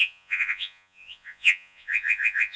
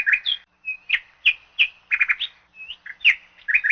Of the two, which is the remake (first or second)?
first